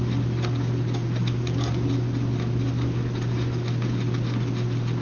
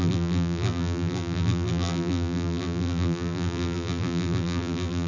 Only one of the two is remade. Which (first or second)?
second